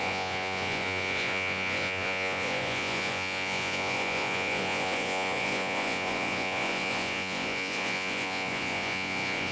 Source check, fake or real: fake